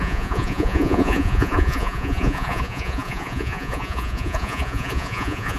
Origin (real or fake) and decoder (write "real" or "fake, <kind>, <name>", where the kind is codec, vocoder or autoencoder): fake, vocoder, Vocos